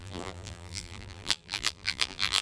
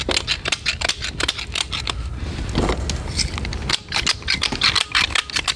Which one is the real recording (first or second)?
second